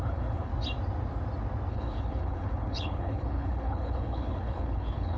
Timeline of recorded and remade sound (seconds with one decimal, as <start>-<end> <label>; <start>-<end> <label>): 0.0-0.5 remade; 0.5-1.7 recorded; 1.7-5.2 remade